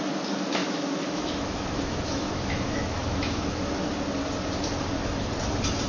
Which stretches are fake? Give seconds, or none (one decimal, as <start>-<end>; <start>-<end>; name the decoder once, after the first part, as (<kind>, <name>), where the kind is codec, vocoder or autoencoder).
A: 0.6-3.7 (autoencoder, DAC-VAE)